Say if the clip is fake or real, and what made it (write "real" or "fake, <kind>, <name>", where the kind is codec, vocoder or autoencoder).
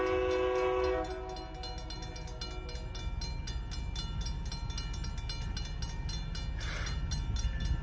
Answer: real